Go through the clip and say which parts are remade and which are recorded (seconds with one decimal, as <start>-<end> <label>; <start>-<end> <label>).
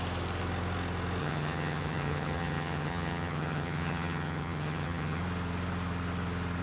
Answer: 0.0-1.2 recorded; 1.2-5.2 remade; 5.2-6.6 recorded